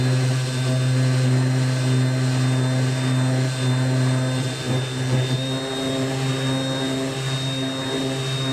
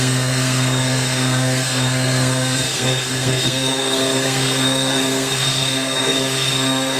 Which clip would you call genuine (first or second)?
first